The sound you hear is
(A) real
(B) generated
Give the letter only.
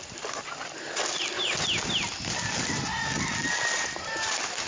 A